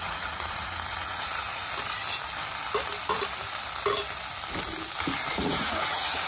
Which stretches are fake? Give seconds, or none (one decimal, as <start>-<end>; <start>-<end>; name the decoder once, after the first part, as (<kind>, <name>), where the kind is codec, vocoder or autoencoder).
0.0-1.6 (vocoder, Vocos); 5.3-6.3